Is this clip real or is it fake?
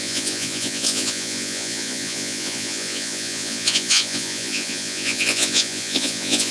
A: fake